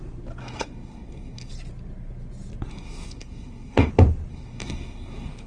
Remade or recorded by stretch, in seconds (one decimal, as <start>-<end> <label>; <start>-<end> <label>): 0.0-0.4 recorded; 0.4-1.5 remade; 1.5-2.7 recorded; 2.7-3.9 remade; 3.9-4.3 recorded; 4.3-5.5 remade